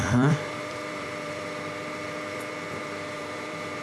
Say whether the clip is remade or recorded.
remade